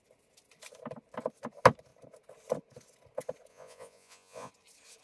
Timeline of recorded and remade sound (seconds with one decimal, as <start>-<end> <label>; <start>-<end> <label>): 0.0-3.5 recorded; 3.5-4.5 remade; 4.5-5.0 recorded